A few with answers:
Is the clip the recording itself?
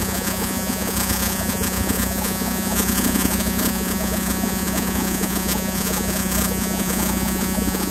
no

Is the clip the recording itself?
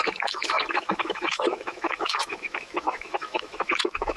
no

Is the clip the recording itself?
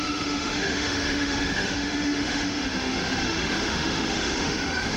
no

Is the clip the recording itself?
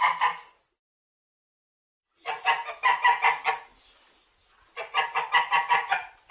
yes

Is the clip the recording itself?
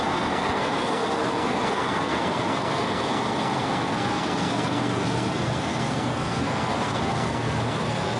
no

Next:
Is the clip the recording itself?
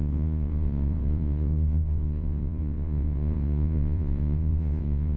no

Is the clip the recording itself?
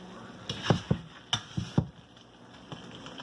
yes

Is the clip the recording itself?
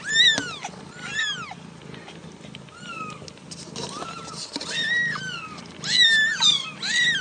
yes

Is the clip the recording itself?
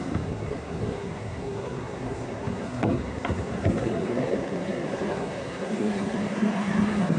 no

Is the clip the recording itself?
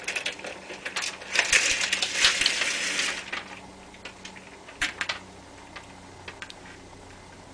yes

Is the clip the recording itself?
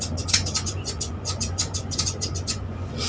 no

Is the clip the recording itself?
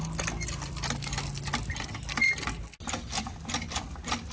yes